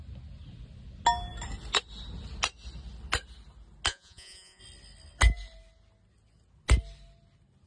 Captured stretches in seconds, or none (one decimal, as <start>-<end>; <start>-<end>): 0.0-3.9; 4.6-7.7